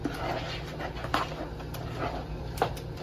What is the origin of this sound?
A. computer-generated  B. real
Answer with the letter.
B